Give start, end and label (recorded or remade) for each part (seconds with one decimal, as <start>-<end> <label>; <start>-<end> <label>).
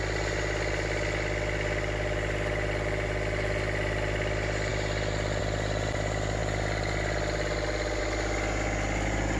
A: 0.0-9.4 recorded